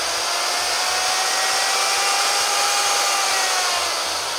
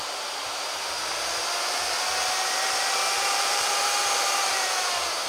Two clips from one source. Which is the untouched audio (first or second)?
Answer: first